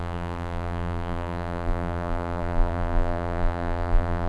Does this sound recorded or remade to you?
remade